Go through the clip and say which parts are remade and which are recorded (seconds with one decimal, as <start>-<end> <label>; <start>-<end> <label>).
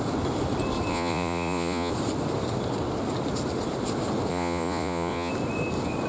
0.0-0.9 recorded; 0.9-1.9 remade; 1.9-4.3 recorded; 4.3-5.3 remade; 5.3-6.1 recorded